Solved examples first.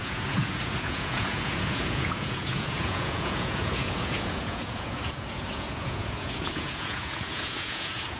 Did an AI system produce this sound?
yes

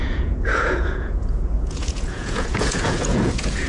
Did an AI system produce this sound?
yes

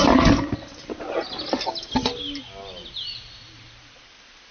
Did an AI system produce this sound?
no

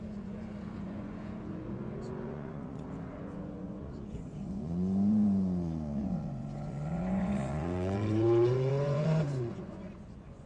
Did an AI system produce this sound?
yes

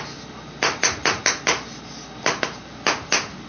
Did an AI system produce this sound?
no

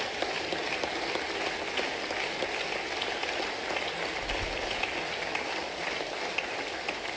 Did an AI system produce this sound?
no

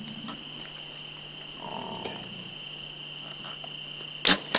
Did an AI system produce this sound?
no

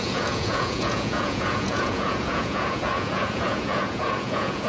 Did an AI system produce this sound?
yes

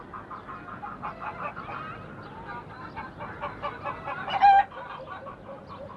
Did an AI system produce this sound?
no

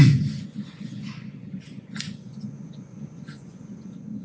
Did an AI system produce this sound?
yes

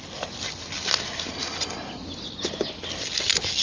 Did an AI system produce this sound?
no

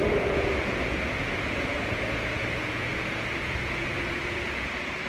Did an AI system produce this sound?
yes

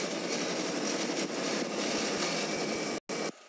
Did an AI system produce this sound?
no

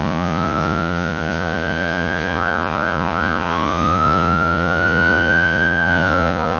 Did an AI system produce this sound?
yes